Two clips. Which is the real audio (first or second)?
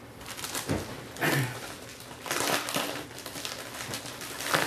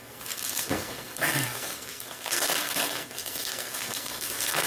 first